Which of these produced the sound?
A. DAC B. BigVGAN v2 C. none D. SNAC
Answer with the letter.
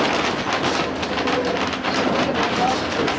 C